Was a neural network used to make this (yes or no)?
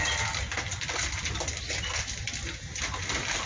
no